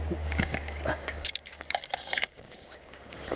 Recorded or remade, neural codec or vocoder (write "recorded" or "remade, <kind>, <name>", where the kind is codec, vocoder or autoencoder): remade, codec, DAC